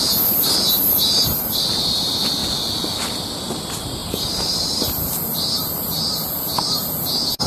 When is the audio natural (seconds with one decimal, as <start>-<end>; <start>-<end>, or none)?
2.4-3.6